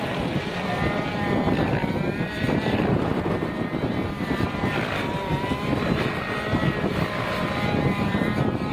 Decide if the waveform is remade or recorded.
remade